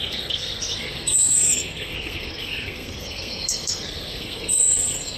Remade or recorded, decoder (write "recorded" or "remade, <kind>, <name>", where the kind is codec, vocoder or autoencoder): remade, codec, SNAC